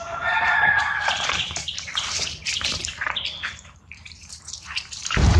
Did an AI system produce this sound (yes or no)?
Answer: yes